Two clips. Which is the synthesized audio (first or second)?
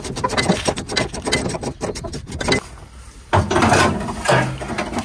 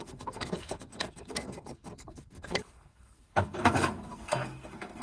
second